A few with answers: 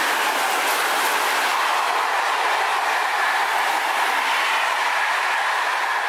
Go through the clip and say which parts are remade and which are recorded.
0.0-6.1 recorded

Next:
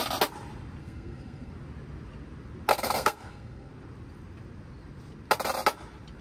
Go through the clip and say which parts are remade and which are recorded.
0.0-0.8 recorded; 0.8-1.5 remade; 1.5-2.7 recorded; 2.7-3.7 remade; 3.7-6.2 recorded

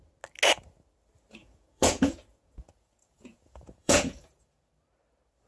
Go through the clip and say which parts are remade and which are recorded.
0.0-1.4 recorded; 1.4-4.7 remade; 4.7-5.5 recorded

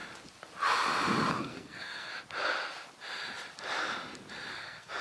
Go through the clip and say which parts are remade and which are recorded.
0.0-1.3 recorded; 1.3-2.1 remade; 2.1-4.5 recorded; 4.5-5.0 remade

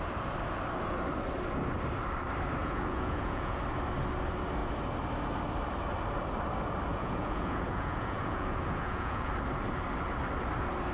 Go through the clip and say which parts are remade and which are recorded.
0.0-2.6 recorded; 2.6-3.6 remade; 3.6-6.9 recorded; 6.9-9.3 remade; 9.3-10.9 recorded

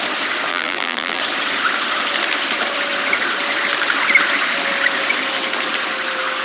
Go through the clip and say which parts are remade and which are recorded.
0.0-0.5 recorded; 0.5-1.2 remade; 1.2-6.4 recorded

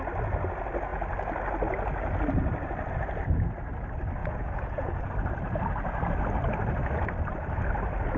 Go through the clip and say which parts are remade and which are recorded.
0.0-4.2 recorded; 4.2-5.1 remade; 5.1-8.2 recorded

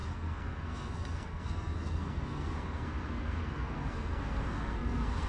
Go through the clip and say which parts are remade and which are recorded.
0.0-5.3 remade